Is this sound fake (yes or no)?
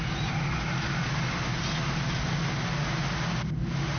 no